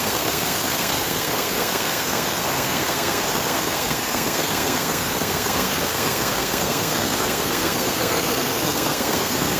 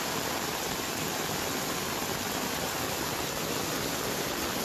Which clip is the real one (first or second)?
second